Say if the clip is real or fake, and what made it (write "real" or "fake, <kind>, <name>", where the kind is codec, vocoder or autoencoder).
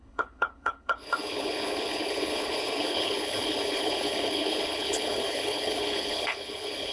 fake, codec, HILCodec